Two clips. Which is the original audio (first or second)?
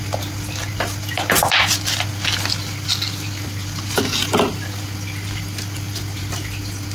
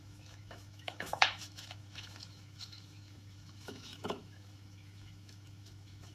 first